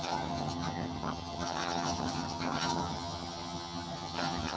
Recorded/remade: remade